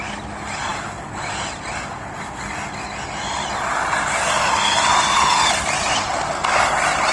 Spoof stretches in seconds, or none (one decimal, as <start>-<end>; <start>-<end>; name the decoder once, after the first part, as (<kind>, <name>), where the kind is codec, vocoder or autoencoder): none